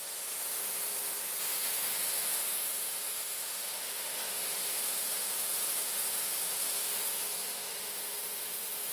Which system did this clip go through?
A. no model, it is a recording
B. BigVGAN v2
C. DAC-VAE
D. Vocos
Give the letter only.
C